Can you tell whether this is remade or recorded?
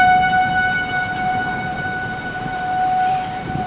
remade